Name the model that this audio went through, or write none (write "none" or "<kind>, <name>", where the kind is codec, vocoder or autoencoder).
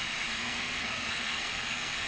codec, SNAC